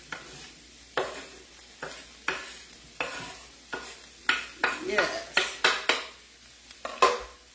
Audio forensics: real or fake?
real